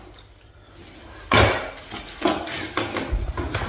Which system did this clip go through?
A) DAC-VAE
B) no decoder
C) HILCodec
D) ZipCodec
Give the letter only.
B